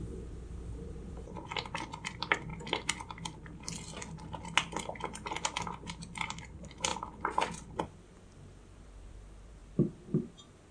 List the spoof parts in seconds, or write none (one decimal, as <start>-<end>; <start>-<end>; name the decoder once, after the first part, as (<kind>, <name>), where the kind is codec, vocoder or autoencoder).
0.0-2.5 (vocoder, BigVGAN v2); 6.4-6.9; 7.7-9.6